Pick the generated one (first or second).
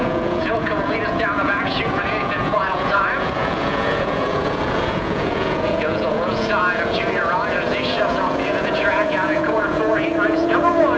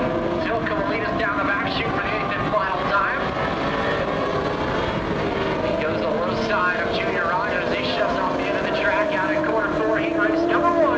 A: first